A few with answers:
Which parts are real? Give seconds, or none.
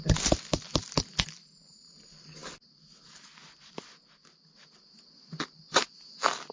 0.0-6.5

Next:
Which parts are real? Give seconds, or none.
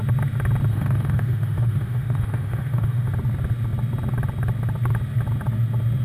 0.0-0.7; 3.1-6.0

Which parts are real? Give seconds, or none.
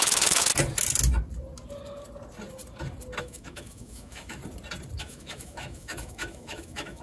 0.5-3.2; 4.4-5.0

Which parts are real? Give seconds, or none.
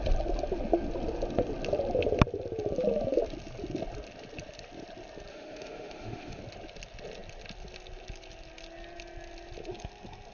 0.0-5.3; 6.4-10.3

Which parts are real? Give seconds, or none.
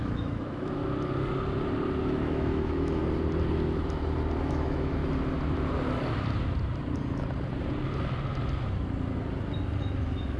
0.8-2.0; 3.0-4.5; 5.0-9.8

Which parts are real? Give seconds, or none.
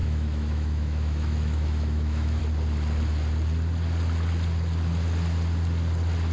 2.4-6.3